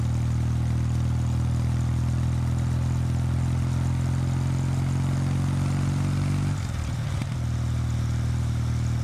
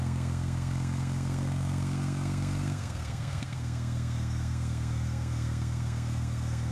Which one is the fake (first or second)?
second